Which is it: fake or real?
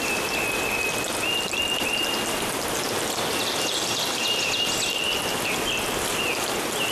real